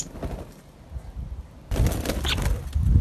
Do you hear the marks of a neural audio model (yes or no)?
no